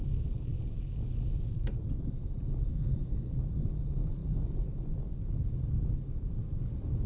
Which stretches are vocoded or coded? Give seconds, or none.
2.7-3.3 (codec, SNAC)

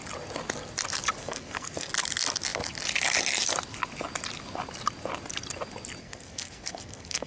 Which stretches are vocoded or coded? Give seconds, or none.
1.2-1.9 (codec, SNAC); 6.0-7.3

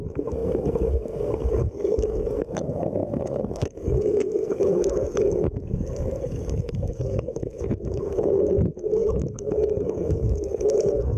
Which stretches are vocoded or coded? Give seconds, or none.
0.0-11.2 (codec, SNAC)